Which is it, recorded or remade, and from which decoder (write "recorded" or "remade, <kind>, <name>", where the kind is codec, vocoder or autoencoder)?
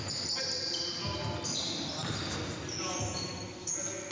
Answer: recorded